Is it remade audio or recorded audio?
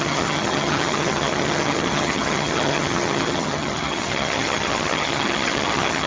remade